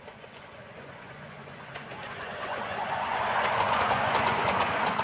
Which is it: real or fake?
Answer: fake